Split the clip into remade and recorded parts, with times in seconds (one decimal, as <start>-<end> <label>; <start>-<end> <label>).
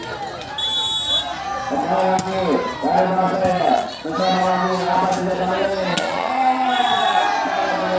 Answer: 0.0-3.5 recorded; 3.5-4.1 remade; 4.1-5.9 recorded; 5.9-7.2 remade; 7.2-8.0 recorded